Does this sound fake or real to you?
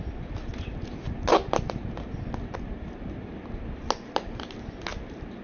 real